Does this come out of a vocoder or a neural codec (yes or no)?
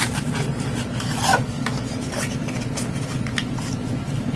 no